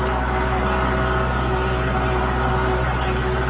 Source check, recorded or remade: recorded